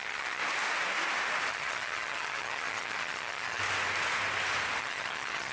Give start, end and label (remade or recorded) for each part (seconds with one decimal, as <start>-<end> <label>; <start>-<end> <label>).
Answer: 0.0-0.4 remade; 0.4-1.5 recorded; 1.5-3.6 remade; 3.6-4.8 recorded; 4.8-5.5 remade